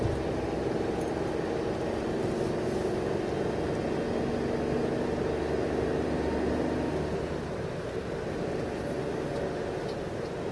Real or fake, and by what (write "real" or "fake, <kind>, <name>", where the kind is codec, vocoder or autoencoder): real